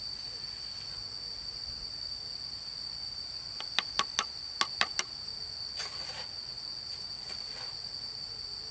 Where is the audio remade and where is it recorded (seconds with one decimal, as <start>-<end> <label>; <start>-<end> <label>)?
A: 0.0-8.7 recorded